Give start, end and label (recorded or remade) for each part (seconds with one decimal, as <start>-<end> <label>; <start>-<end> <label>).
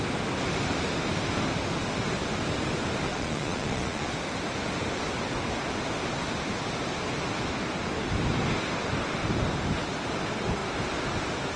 0.0-3.1 recorded; 3.1-4.1 remade; 4.1-11.6 recorded